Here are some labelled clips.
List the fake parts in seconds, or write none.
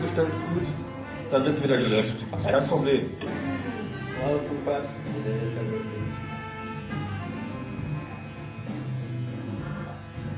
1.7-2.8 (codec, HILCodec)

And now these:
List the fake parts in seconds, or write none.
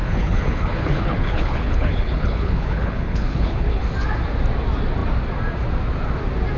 0.0-3.8 (codec, HILCodec)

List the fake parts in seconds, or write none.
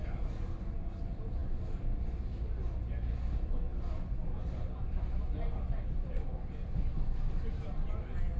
none